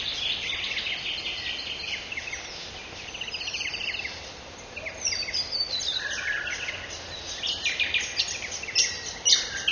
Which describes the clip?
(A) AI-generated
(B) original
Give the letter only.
B